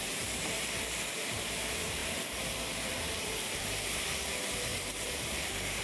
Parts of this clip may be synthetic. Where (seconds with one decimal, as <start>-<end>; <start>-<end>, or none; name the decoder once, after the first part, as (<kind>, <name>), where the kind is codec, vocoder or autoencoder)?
0.0-5.8 (vocoder, BigVGAN v2)